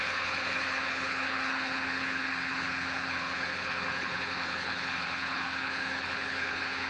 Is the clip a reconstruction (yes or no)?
yes